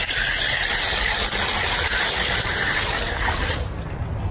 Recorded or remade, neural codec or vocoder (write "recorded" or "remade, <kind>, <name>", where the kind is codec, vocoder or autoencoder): recorded